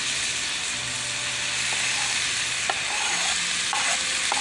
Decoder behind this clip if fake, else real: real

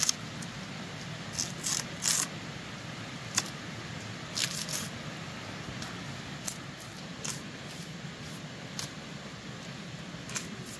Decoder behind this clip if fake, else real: real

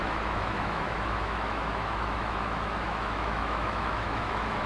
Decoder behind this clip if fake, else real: fake, autoencoder, DAC-VAE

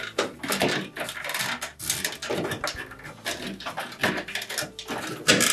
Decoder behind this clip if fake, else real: real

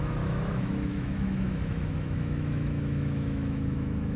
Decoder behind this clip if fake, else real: fake, autoencoder, DAC-VAE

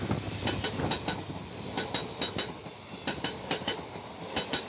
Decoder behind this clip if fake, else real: real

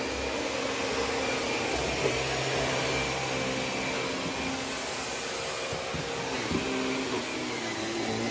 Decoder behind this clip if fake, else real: real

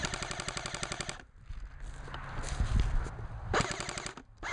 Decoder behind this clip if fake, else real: real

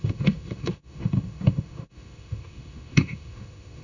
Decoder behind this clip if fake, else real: fake, autoencoder, DAC-VAE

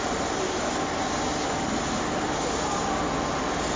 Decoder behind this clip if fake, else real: real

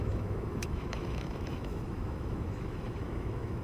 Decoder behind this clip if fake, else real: fake, autoencoder, DAC-VAE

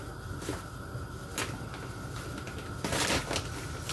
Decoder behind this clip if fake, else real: real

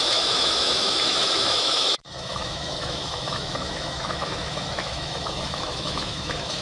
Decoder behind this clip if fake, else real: fake, autoencoder, DAC-VAE